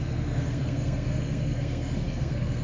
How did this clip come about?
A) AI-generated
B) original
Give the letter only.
A